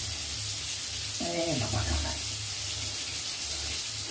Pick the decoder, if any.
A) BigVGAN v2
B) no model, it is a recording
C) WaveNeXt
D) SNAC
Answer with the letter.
B